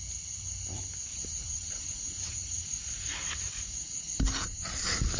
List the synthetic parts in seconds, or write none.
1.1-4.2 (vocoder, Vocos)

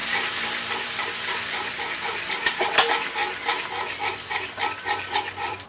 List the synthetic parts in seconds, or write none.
0.0-3.2 (vocoder, BigVGAN v2); 5.0-5.7

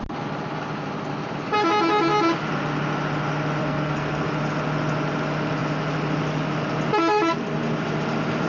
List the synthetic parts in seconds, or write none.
3.6-4.3 (codec, SNAC)